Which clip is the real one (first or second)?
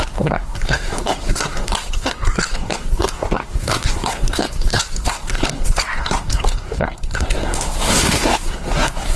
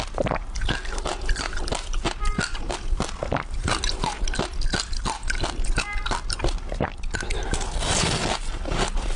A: second